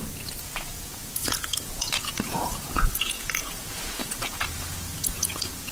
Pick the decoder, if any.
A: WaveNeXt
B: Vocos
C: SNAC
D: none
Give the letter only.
B